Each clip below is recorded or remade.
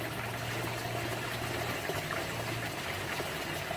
recorded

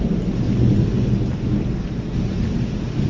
recorded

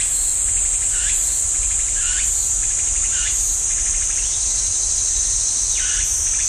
recorded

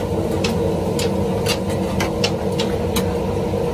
recorded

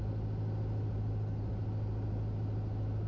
recorded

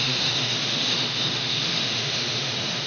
remade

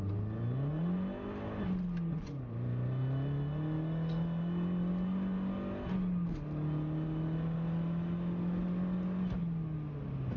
recorded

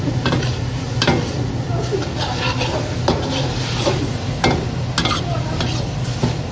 recorded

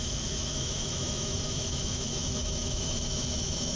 remade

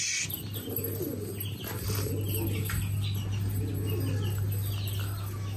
recorded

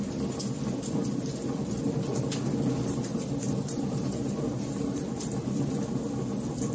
recorded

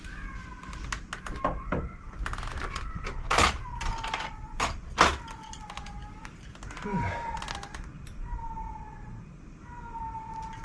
recorded